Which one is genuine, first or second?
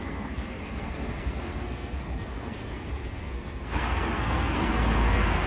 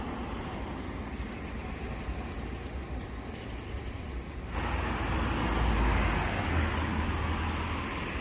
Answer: second